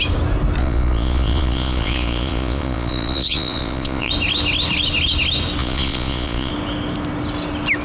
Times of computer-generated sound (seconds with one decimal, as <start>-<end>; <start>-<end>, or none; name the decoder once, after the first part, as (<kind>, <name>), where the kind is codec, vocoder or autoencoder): 0.6-4.1 (vocoder, Vocos); 5.6-6.5